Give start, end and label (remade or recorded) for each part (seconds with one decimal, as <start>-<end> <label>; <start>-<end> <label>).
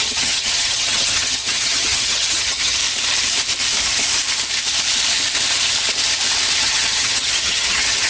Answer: 0.0-2.8 remade; 2.8-6.6 recorded; 6.6-8.1 remade